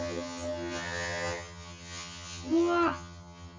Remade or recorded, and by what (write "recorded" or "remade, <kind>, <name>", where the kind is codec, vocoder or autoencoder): remade, vocoder, HiFi-GAN